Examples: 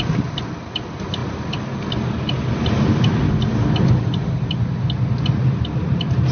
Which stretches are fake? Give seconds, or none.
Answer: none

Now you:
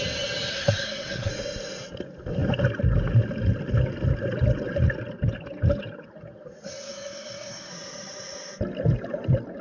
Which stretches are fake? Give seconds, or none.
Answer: 0.5-1.3; 6.7-7.7